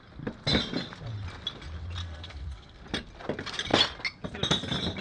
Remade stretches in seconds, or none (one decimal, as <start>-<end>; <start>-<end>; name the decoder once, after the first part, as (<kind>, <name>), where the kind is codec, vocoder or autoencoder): 2.0-2.8 (codec, SNAC)